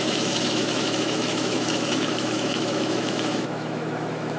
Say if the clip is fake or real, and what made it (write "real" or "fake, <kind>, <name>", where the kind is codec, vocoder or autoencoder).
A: fake, autoencoder, DAC-VAE